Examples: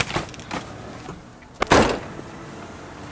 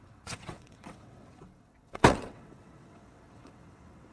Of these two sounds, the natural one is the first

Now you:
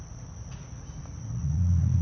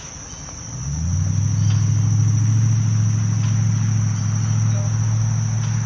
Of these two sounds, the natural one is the second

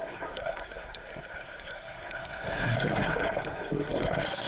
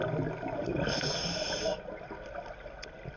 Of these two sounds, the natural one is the second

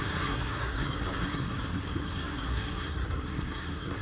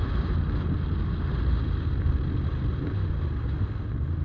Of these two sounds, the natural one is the second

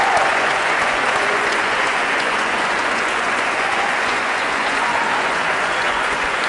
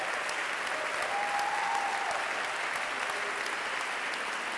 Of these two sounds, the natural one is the second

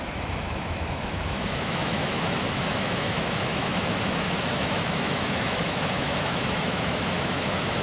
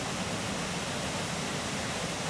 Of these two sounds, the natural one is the second